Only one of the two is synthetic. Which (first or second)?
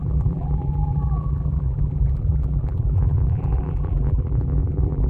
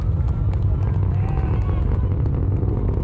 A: first